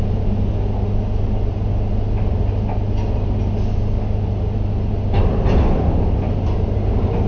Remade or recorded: recorded